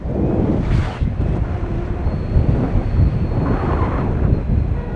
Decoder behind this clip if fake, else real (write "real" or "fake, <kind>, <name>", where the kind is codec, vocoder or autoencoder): real